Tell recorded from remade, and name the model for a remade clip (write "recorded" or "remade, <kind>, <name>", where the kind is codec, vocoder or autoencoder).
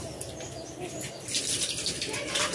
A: recorded